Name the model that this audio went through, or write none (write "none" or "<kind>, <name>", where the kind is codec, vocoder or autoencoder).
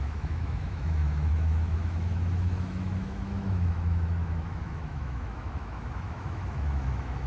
autoencoder, DAC-VAE